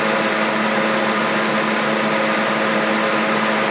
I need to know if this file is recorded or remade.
recorded